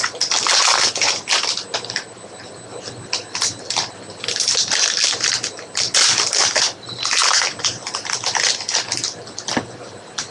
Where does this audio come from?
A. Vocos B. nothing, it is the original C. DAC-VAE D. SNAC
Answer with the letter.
B